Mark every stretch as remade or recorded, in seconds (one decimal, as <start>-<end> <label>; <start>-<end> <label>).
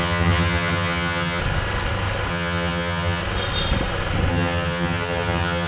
0.0-1.4 remade; 1.4-2.3 recorded; 2.3-3.2 remade; 3.2-4.3 recorded; 4.3-5.7 remade